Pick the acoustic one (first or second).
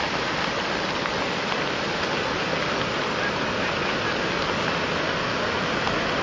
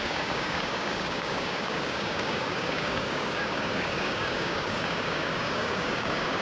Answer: first